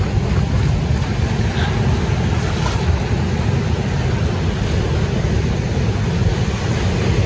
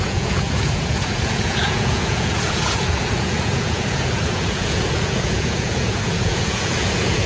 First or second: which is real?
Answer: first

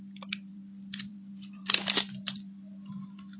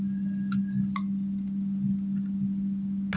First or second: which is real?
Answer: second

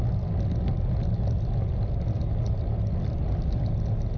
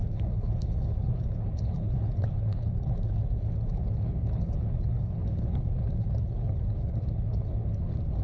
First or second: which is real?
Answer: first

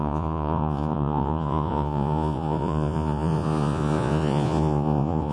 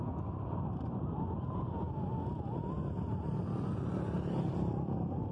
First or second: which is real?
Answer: second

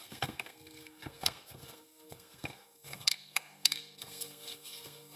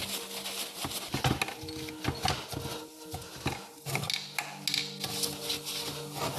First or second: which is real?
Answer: second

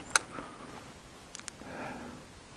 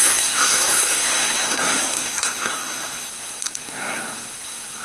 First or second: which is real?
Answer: first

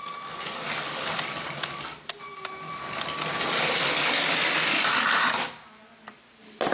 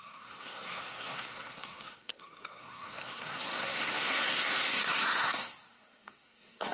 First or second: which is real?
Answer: first